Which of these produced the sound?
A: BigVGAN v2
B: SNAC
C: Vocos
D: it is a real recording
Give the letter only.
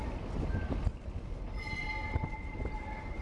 D